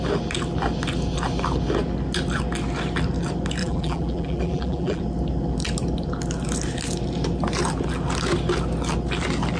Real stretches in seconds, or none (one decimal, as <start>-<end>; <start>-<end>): 0.0-3.6; 5.0-9.6